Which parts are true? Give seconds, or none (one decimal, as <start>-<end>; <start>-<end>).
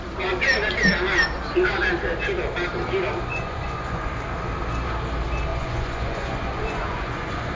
0.0-3.3; 4.1-5.5